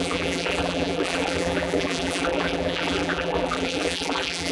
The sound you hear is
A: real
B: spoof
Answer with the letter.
B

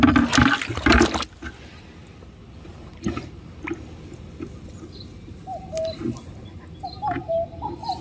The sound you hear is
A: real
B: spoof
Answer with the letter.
A